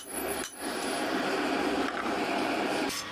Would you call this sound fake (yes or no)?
yes